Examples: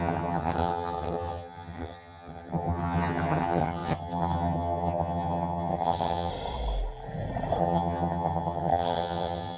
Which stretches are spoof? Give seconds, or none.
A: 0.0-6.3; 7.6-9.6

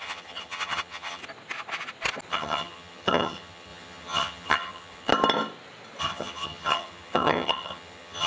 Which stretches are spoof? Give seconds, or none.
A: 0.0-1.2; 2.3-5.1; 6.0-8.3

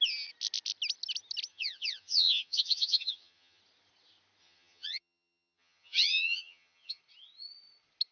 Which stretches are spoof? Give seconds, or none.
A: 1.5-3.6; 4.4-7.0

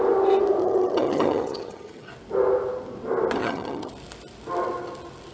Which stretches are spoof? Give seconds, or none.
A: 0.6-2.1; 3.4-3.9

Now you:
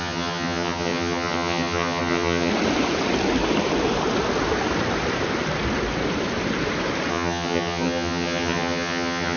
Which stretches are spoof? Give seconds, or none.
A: 0.0-2.5; 7.1-9.4

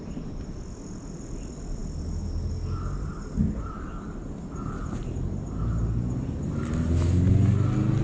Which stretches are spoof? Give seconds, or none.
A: none

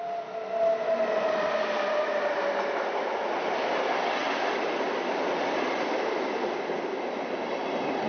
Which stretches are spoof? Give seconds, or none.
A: none

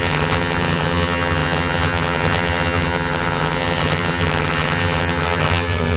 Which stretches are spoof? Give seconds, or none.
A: 0.0-6.0